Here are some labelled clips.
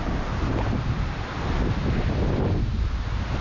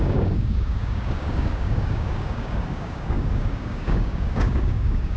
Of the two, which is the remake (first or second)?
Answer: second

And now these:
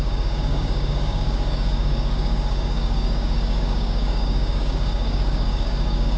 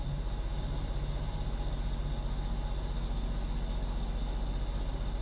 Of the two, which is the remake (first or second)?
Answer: first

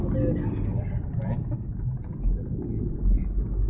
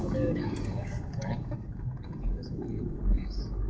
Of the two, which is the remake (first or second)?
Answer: second